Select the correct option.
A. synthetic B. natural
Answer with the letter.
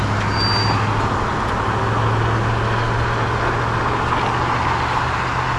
B